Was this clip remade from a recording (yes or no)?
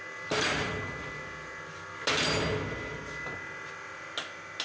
no